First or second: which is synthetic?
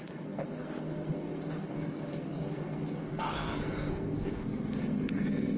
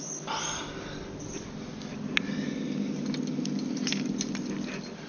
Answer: first